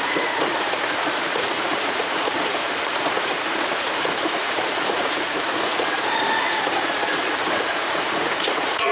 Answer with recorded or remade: remade